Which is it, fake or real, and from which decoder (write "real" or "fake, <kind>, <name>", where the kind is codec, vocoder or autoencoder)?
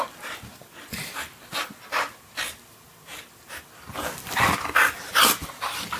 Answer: real